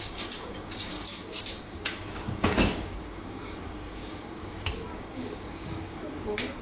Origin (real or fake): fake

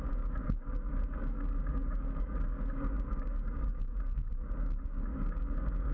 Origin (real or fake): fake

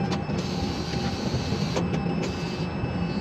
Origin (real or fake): real